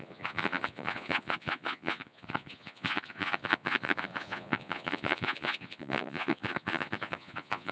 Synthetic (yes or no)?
yes